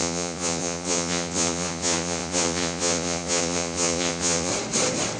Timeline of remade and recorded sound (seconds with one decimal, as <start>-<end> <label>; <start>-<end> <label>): 0.0-4.5 remade; 4.5-5.2 recorded